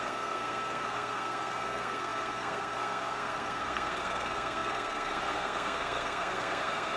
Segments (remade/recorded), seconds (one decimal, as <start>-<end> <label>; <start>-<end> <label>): 0.0-7.0 remade